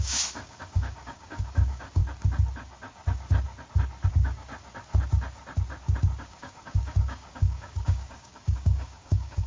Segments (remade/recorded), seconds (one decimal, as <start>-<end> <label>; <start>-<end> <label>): 0.0-2.0 remade; 2.0-4.1 recorded; 4.1-4.5 remade; 4.5-6.2 recorded; 6.2-9.5 remade